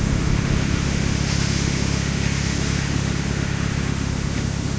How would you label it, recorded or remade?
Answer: remade